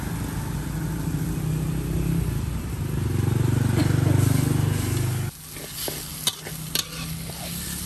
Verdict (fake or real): real